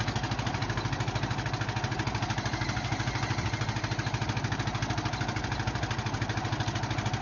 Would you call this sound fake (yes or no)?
no